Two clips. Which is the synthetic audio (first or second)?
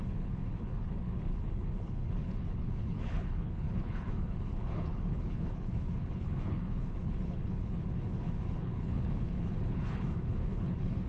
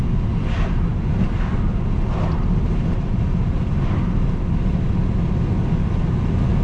first